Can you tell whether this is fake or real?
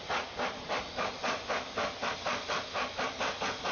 real